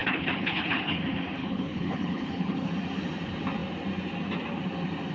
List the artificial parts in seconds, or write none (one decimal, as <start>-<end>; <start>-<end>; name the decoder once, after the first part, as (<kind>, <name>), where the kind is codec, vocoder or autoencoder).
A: 0.0-1.0 (codec, HILCodec); 1.4-2.7